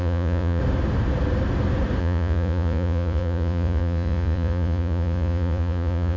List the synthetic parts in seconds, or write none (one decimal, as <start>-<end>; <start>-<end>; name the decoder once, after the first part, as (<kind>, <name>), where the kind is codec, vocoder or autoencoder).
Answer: 0.0-0.6 (vocoder, Vocos); 2.0-6.2